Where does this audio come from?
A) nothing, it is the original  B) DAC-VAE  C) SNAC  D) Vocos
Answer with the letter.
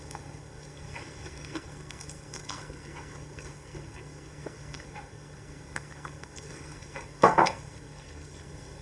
C